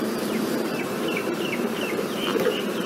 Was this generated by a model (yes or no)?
yes